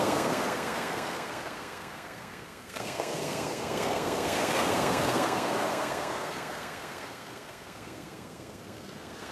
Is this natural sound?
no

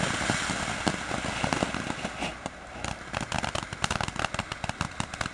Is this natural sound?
yes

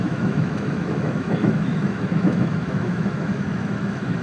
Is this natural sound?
no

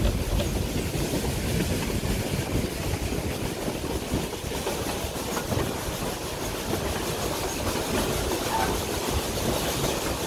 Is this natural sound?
yes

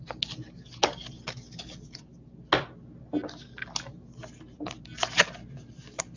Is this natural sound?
yes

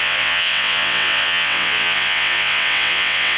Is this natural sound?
no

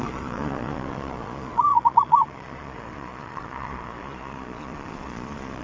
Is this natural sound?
no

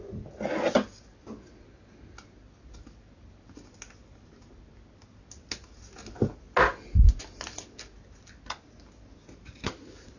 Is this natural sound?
yes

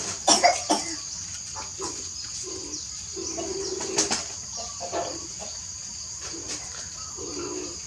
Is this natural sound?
yes